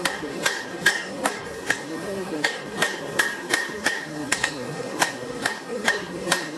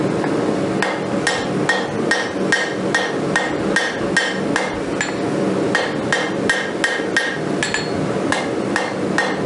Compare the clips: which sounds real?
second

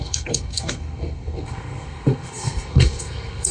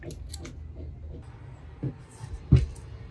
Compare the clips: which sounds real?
second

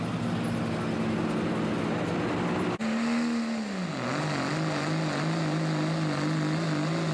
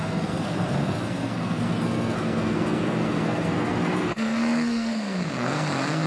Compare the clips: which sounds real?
first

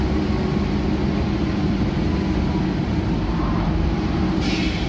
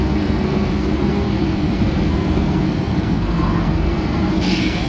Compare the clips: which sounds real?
first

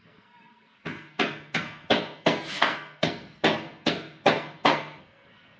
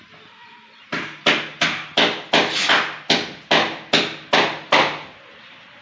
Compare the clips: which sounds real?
second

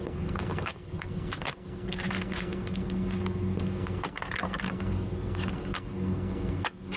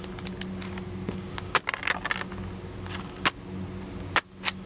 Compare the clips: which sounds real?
second